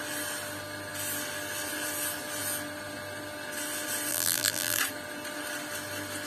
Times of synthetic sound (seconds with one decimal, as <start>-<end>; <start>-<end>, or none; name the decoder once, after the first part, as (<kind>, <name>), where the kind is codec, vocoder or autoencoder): 4.1-4.8 (vocoder, BigVGAN v2)